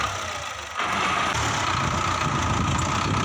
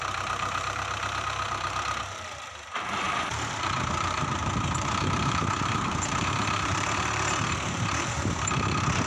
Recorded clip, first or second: first